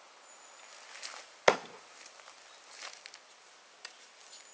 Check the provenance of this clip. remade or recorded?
recorded